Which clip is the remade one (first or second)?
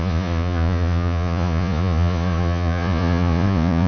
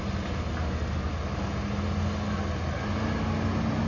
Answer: first